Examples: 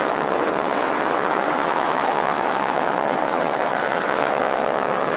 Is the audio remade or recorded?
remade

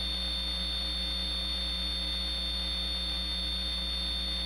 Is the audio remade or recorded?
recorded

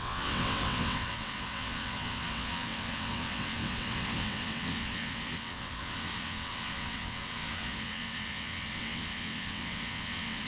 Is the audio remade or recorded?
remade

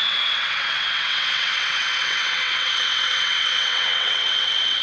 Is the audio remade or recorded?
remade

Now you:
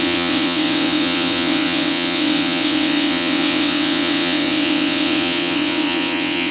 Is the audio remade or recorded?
remade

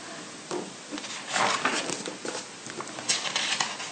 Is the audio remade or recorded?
recorded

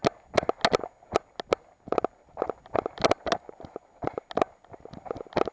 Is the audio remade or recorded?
recorded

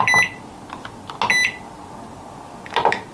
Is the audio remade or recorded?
recorded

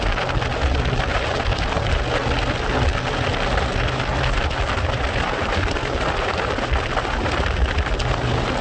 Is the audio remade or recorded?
recorded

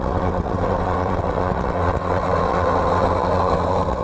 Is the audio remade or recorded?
remade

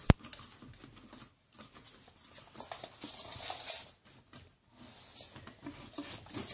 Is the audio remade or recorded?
recorded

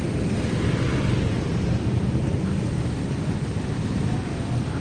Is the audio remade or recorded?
recorded